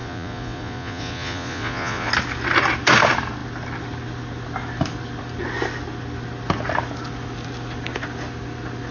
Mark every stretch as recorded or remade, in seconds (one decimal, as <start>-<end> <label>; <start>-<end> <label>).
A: 0.0-2.1 remade; 2.1-8.9 recorded